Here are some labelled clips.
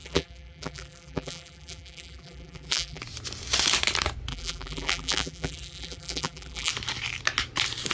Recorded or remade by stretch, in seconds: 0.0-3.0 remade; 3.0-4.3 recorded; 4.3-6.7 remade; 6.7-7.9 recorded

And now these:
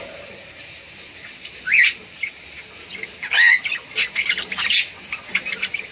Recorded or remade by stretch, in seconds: 0.0-2.6 remade; 2.6-3.8 recorded; 3.8-5.9 remade

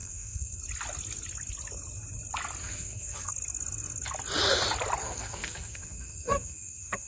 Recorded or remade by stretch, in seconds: 0.0-0.6 remade; 0.6-2.6 recorded; 2.6-3.3 remade; 3.3-5.0 recorded; 5.0-7.1 remade

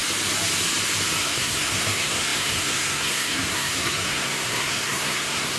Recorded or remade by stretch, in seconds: 0.0-1.2 recorded; 1.2-5.6 remade